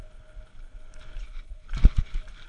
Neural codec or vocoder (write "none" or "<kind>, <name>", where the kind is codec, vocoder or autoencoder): none